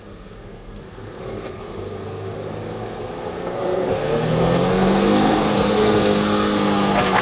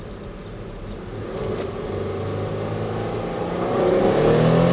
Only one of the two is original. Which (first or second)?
second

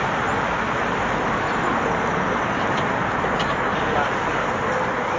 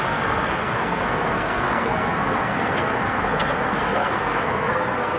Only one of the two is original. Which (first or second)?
first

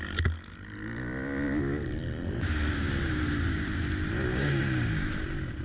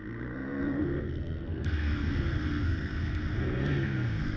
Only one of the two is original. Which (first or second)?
first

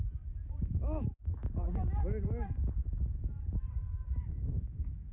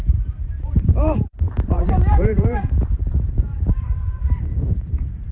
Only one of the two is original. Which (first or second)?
first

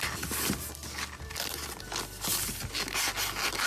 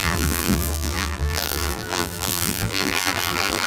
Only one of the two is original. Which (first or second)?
first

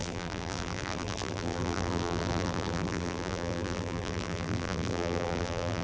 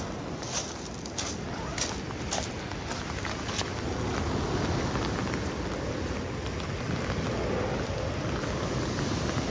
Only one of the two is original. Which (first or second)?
second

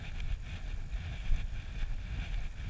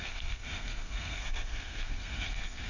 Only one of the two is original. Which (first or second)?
first